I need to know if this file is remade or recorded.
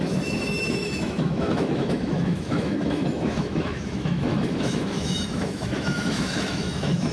remade